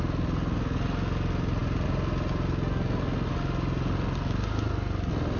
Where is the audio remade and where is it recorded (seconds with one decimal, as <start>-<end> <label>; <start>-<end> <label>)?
0.0-5.4 recorded